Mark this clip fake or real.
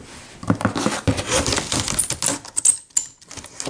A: real